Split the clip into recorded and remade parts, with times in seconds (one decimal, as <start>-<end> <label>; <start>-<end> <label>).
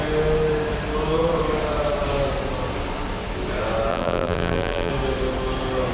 0.0-3.9 recorded; 3.9-4.9 remade; 4.9-5.9 recorded